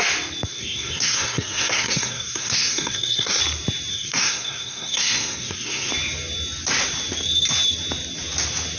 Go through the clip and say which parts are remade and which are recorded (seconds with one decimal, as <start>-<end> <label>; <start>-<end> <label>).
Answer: 0.0-0.5 recorded; 0.5-3.4 remade; 3.4-3.9 recorded; 3.9-5.9 remade; 5.9-8.8 recorded

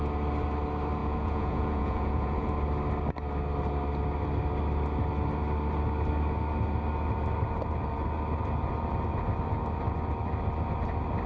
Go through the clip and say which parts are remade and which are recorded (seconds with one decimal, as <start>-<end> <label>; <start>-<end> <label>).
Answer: 0.0-1.0 recorded; 1.0-2.5 remade; 2.5-11.3 recorded

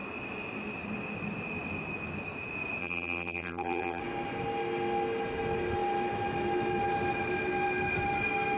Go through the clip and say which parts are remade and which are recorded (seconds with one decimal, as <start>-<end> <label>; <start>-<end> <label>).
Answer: 0.0-2.8 recorded; 2.8-4.0 remade; 4.0-8.6 recorded